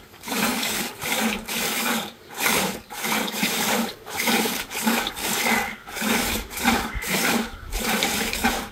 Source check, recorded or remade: remade